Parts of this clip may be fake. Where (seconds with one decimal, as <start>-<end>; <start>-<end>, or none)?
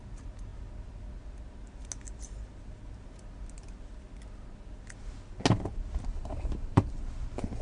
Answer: 6.1-6.9